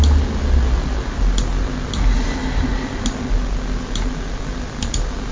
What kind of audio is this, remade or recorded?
recorded